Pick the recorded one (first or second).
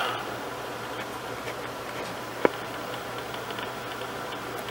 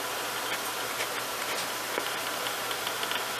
second